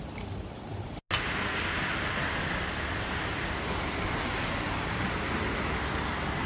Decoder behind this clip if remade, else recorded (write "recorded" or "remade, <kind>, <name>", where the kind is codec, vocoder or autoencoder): recorded